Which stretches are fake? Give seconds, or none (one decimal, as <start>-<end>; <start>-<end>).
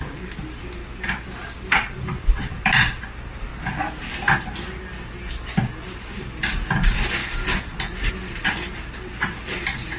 0.0-0.8; 1.7-3.5; 6.2-10.0